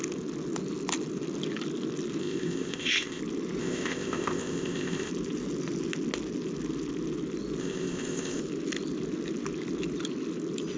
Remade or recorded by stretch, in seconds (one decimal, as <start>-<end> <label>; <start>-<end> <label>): 0.0-2.2 recorded; 2.2-3.2 remade; 3.2-3.6 recorded; 3.6-5.1 remade; 5.1-7.6 recorded; 7.6-8.4 remade; 8.4-10.8 recorded